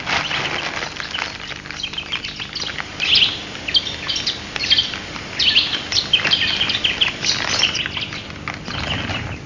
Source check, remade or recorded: recorded